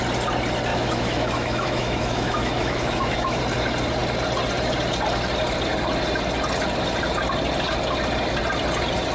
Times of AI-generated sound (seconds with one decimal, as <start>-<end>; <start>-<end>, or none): 0.7-3.4